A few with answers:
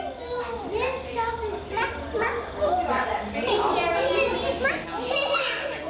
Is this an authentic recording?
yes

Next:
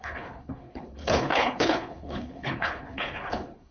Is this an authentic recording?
no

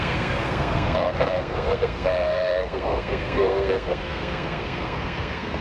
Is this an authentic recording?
no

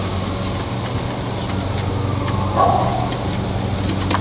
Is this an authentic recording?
yes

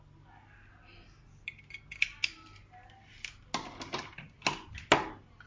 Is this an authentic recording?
yes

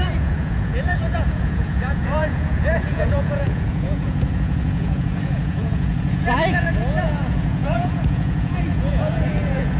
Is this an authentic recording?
no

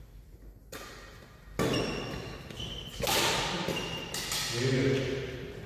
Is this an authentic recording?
yes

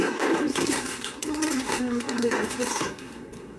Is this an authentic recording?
no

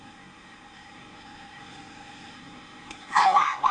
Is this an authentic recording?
no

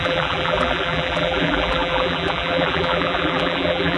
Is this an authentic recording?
no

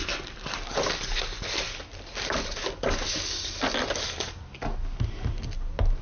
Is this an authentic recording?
yes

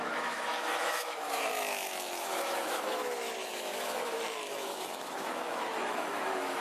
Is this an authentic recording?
no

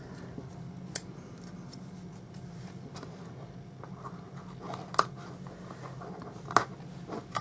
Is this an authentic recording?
yes